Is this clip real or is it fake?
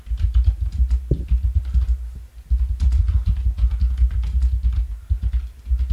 real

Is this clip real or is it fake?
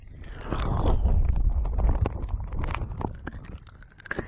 real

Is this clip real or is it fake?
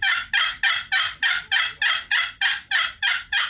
real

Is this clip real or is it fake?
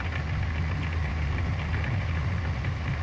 real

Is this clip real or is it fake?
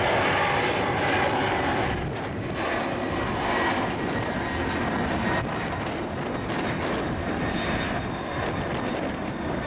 real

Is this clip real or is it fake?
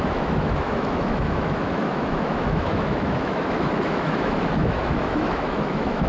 fake